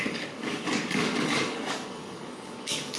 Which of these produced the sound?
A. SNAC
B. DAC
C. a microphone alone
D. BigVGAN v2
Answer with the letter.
B